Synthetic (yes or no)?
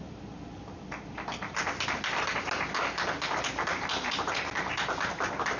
no